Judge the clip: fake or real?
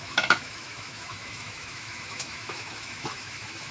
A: fake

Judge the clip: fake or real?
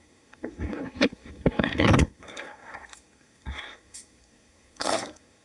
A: fake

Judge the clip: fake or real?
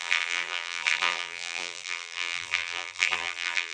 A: fake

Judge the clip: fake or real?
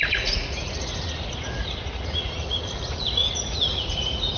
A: fake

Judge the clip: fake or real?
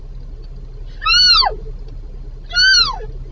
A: real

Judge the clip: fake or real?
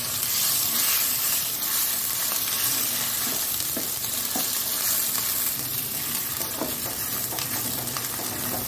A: fake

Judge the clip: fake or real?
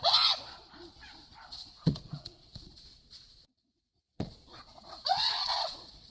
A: fake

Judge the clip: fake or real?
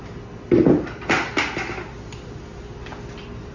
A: real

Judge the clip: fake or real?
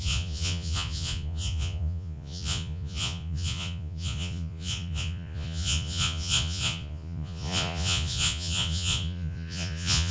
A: fake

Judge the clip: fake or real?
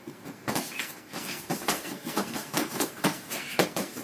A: fake